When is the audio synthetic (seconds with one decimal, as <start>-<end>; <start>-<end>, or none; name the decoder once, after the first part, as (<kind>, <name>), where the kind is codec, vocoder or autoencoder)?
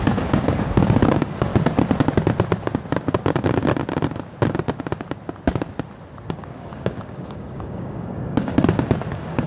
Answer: 0.0-1.5 (codec, DAC); 6.3-8.5; 9.1-9.5